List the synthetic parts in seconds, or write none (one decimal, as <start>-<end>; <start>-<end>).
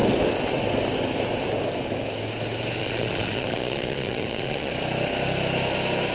2.8-4.7